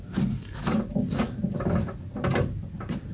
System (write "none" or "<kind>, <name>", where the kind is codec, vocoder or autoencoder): none